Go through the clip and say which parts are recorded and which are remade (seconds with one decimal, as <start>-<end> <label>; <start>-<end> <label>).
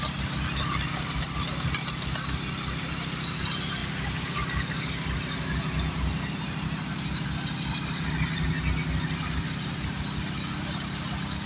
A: 0.0-11.5 recorded